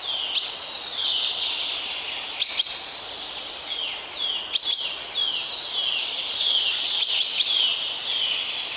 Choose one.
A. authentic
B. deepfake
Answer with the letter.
A